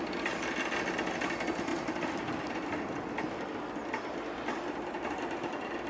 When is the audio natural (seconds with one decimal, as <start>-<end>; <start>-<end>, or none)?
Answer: 0.0-5.9